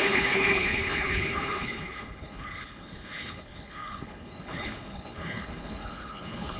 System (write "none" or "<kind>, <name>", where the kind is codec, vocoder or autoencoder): codec, HILCodec